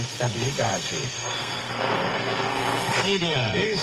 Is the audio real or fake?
fake